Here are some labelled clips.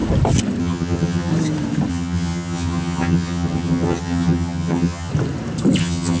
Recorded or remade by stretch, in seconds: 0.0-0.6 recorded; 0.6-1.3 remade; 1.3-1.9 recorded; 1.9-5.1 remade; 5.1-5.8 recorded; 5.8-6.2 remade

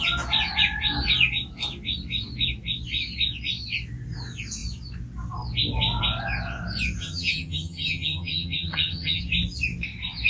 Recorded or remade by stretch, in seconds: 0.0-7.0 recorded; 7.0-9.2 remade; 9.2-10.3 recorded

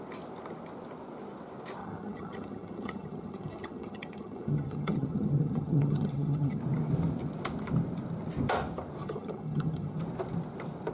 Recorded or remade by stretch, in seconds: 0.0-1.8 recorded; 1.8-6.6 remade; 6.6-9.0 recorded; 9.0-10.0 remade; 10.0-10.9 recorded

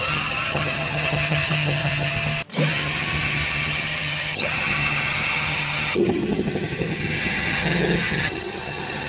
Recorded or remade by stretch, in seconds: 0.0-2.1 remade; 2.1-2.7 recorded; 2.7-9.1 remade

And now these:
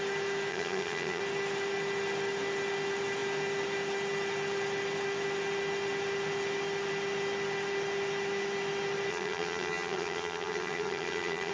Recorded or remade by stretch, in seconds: 0.0-0.5 recorded; 0.5-1.2 remade; 1.2-9.1 recorded; 9.1-11.5 remade

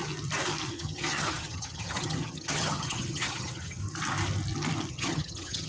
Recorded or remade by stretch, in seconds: 0.0-0.7 recorded; 0.7-3.8 remade; 3.8-4.9 recorded; 4.9-5.7 remade

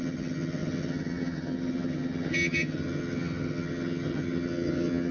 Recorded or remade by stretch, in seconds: 0.0-5.1 remade